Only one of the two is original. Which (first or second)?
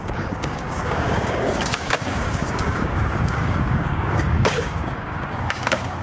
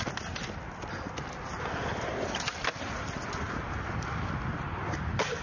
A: second